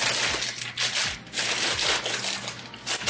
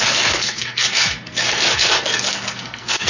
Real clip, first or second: first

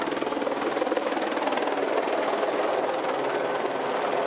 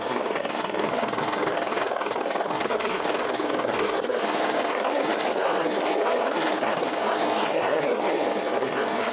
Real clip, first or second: first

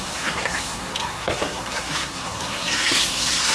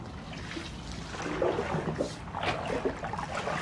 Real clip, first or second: second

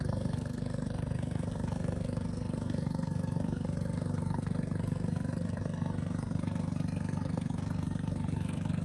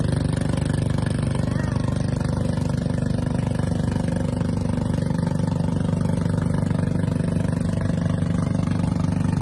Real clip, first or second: second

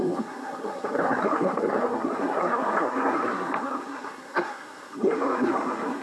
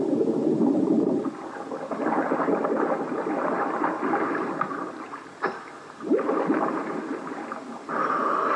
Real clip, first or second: second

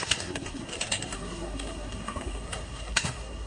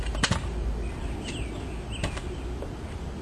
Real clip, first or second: second